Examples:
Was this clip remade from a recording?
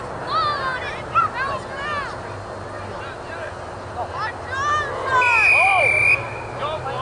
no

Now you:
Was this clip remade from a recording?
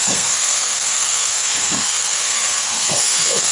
yes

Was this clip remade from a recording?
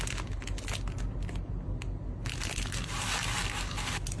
no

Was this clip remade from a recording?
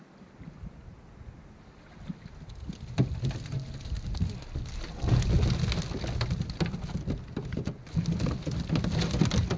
no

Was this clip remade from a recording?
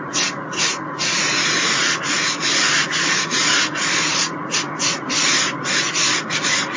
yes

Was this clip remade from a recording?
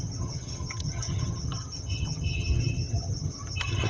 yes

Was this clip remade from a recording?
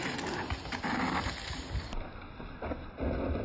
no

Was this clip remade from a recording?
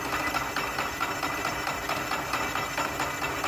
no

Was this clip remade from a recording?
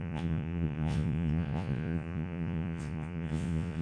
yes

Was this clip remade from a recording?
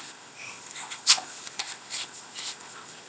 yes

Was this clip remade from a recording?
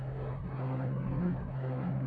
yes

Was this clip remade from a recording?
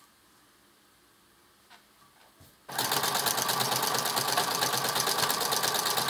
no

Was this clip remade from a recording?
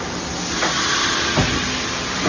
no